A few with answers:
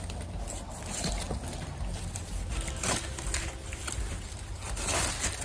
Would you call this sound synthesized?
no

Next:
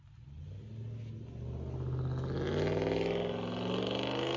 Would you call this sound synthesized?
no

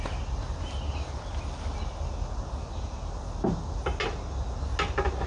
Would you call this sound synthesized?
no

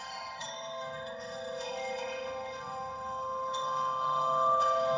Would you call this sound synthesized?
yes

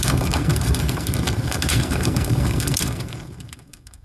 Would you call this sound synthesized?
yes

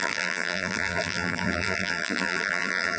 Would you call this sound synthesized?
yes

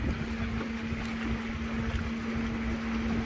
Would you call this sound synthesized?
no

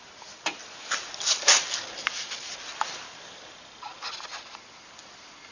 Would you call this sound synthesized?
no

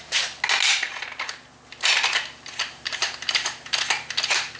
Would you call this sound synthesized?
no